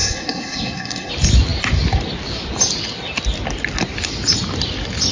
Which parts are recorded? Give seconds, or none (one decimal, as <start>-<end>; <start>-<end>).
1.1-5.1